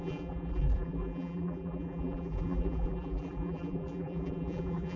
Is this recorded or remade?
remade